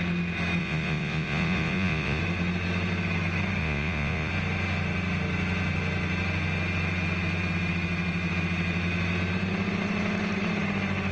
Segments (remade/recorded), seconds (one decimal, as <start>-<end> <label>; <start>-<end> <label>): 0.0-0.6 recorded; 0.6-2.2 remade; 2.2-3.6 recorded; 3.6-4.3 remade; 4.3-11.1 recorded